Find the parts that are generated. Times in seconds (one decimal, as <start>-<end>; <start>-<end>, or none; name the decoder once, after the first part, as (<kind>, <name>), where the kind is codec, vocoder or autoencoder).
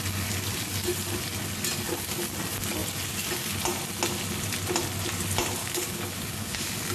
5.6-6.9 (codec, DAC)